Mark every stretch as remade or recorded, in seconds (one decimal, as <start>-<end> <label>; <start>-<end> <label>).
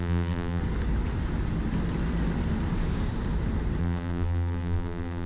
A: 0.0-0.6 remade; 0.6-3.8 recorded; 3.8-5.3 remade